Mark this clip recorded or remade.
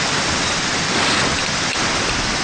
recorded